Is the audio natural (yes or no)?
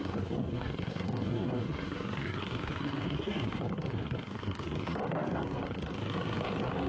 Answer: no